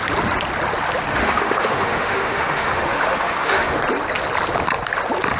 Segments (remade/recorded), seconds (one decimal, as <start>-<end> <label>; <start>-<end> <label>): 0.0-1.1 recorded; 1.1-3.8 remade; 3.8-5.4 recorded